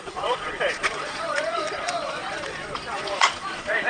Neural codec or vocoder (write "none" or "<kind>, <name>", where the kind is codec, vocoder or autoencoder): vocoder, Vocos